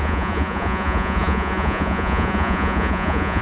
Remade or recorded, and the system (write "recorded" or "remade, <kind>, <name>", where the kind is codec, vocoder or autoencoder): remade, vocoder, Vocos